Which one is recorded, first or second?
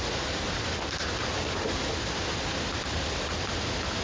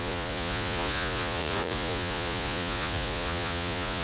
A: first